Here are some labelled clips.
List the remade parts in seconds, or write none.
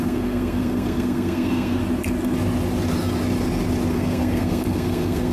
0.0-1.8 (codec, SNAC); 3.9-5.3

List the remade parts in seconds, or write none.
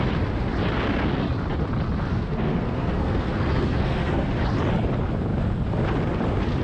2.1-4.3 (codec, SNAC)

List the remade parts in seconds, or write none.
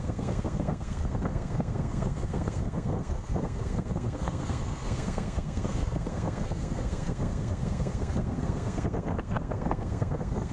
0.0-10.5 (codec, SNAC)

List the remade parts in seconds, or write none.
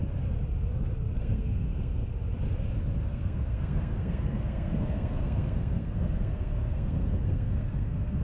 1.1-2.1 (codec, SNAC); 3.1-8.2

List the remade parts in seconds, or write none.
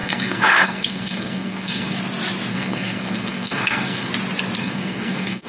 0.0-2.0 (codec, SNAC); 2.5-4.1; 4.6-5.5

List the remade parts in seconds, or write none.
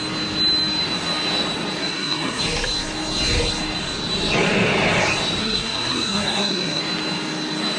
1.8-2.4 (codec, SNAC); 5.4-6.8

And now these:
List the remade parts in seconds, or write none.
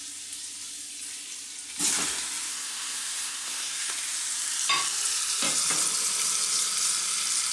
2.5-3.9 (codec, SNAC)